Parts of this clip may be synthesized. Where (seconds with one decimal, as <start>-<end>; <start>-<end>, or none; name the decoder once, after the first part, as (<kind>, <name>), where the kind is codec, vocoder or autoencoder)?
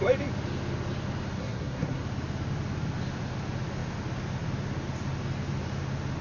1.4-2.0 (codec, SNAC)